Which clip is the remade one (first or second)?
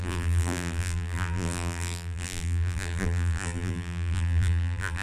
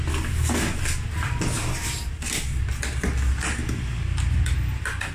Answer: first